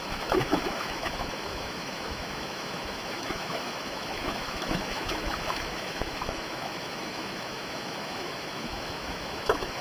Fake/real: fake